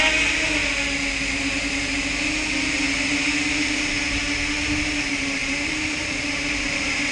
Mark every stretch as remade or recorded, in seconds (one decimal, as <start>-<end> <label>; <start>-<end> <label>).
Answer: 0.0-5.4 recorded; 5.4-7.1 remade